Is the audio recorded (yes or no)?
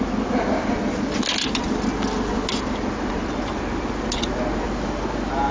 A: yes